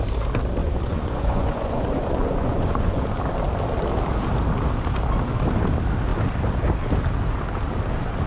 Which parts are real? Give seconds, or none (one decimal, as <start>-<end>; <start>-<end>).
0.0-0.6; 3.0-8.3